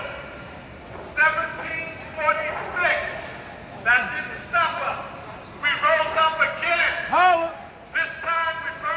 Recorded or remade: recorded